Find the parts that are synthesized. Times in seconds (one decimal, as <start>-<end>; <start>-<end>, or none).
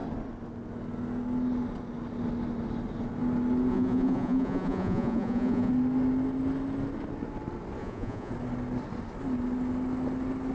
3.7-5.7; 7.8-8.3